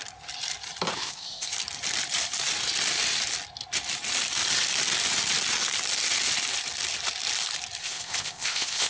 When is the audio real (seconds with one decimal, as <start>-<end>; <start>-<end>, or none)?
0.0-0.9; 1.5-7.8